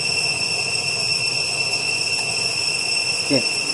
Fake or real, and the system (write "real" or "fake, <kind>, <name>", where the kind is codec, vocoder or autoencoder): fake, vocoder, Vocos